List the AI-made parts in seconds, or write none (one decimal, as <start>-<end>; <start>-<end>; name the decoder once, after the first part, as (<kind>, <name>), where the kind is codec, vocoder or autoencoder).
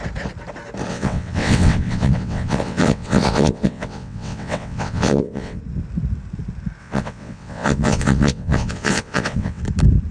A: 0.9-5.6 (vocoder, WaveNeXt); 6.8-9.6